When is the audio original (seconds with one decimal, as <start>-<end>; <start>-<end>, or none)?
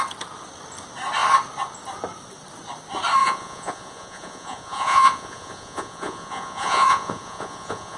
0.0-3.2